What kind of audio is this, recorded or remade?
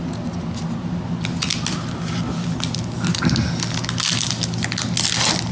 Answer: recorded